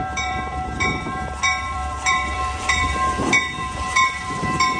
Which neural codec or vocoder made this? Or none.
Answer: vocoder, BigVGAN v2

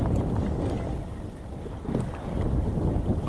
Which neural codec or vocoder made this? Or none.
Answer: none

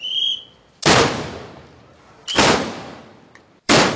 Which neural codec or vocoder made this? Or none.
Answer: vocoder, BigVGAN v2